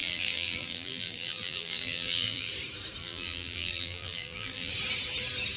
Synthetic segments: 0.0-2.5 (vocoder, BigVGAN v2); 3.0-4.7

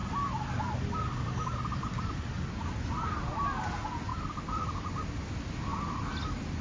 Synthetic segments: 0.0-2.3 (vocoder, BigVGAN v2); 4.1-5.1; 5.7-6.6